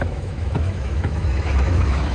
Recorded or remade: remade